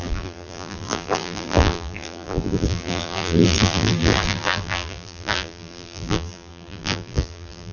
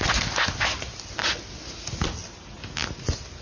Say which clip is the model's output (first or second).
first